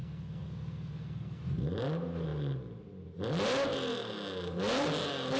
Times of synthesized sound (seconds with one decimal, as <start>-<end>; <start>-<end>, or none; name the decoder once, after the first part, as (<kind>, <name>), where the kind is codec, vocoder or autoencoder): 0.0-1.4 (codec, SNAC)

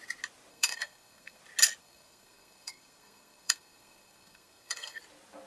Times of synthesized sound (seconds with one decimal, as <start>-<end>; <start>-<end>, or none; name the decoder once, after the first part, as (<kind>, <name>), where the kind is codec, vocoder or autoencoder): 0.5-1.4 (codec, SNAC); 1.8-5.0

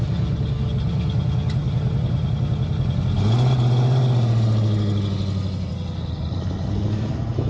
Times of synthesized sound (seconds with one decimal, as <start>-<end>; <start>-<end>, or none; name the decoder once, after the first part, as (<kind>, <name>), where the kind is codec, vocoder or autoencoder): none

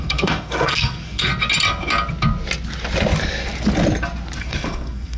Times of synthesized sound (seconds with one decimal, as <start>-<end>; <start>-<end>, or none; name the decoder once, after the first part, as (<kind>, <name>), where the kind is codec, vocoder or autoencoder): 0.0-1.3 (codec, SNAC); 4.4-5.2

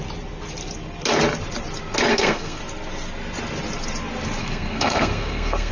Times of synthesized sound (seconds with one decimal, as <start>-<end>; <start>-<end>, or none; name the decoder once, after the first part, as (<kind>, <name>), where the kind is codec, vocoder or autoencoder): 2.1-2.6 (codec, SNAC); 4.4-5.7

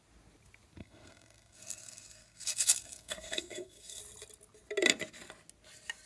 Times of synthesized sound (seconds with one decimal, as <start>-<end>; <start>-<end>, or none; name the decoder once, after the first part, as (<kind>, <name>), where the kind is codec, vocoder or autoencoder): 0.8-4.0 (codec, SNAC)